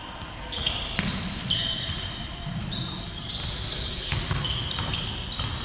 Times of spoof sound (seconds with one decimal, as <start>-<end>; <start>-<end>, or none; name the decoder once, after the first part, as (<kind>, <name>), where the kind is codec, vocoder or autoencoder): 0.6-4.0 (vocoder, BigVGAN v2)